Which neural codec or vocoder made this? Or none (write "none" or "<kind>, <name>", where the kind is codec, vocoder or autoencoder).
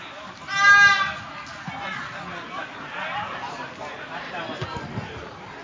none